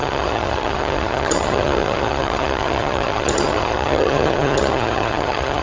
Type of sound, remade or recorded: remade